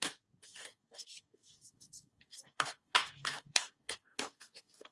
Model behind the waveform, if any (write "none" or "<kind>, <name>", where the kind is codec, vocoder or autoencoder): codec, DAC